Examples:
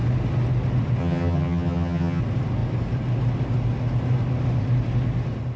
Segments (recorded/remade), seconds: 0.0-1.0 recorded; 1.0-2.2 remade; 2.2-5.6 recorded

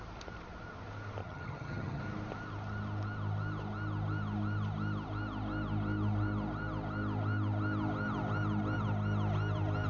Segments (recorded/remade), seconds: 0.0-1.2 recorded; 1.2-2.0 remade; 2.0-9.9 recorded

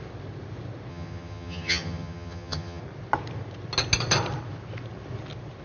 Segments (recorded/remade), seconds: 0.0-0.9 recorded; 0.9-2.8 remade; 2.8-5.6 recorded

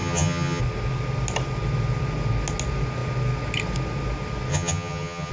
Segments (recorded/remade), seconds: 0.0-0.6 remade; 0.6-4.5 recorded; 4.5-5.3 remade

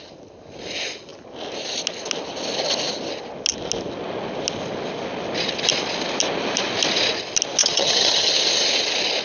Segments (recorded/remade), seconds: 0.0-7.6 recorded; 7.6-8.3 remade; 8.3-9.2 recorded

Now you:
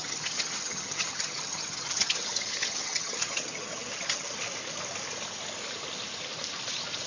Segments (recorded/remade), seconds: 0.0-4.3 remade; 4.3-7.1 recorded

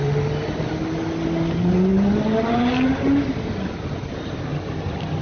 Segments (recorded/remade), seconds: 0.0-5.2 recorded

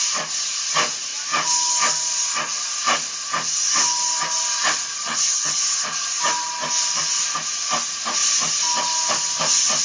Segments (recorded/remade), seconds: 0.0-5.0 recorded; 5.0-5.6 remade; 5.6-9.8 recorded